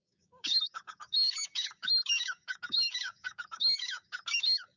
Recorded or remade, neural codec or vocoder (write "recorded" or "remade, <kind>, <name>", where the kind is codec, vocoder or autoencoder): remade, codec, DAC